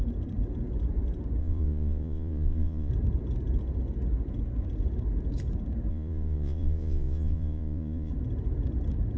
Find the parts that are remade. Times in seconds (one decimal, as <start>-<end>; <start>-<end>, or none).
1.4-2.9; 5.9-8.1